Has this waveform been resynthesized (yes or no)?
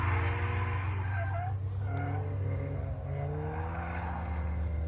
no